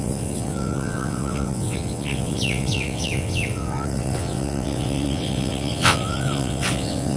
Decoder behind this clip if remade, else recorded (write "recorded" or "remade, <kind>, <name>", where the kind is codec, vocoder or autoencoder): remade, vocoder, WaveNeXt